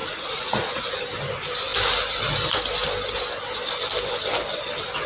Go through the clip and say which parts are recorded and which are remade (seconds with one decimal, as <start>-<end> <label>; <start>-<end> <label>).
0.0-0.9 remade; 0.9-5.1 recorded